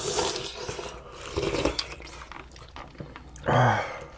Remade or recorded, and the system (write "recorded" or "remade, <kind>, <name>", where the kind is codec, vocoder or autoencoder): recorded